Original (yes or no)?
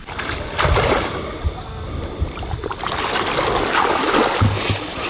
yes